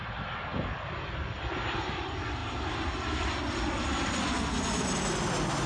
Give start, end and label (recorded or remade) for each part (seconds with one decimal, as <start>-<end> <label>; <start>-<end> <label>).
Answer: 0.0-5.7 recorded